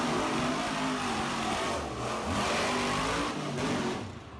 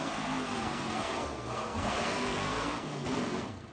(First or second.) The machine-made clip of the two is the second